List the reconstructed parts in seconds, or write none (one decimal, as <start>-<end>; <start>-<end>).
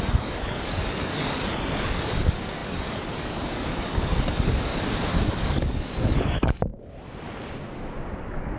0.0-4.7; 5.3-6.7; 8.2-8.6